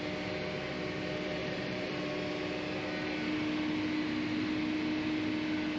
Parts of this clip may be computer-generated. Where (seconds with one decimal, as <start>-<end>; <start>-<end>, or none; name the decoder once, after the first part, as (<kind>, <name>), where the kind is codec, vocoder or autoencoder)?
1.4-2.0 (vocoder, BigVGAN v2)